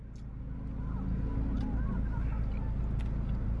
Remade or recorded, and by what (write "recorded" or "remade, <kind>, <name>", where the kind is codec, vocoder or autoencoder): recorded